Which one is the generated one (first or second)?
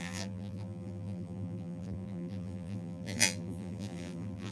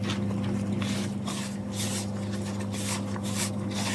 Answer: first